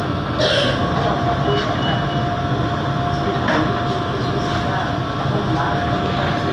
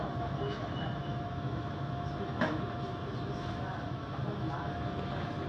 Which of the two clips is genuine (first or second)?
first